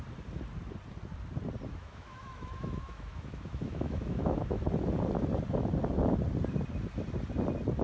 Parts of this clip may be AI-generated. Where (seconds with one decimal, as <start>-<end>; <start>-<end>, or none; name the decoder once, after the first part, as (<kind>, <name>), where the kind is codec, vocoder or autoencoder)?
1.7-4.7 (autoencoder, DAC-VAE)